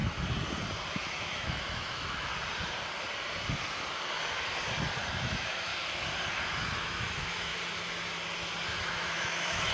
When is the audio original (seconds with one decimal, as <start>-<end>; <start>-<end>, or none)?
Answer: 0.0-1.0; 2.3-5.1; 5.7-6.6; 7.5-8.8

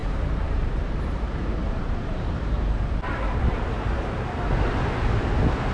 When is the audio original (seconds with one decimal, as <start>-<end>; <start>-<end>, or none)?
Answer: 3.4-5.7